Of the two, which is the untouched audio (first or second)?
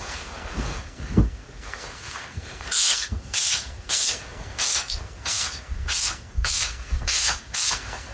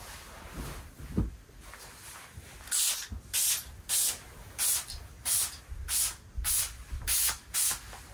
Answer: second